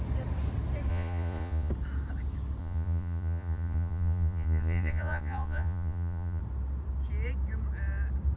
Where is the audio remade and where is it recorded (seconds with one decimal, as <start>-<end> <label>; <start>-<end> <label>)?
0.0-0.9 recorded; 0.9-1.7 remade; 1.7-2.6 recorded; 2.6-6.4 remade; 6.4-8.4 recorded